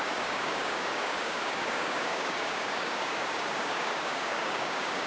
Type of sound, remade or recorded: remade